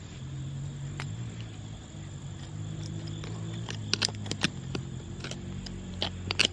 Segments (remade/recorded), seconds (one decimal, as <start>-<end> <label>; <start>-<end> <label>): 0.0-6.5 remade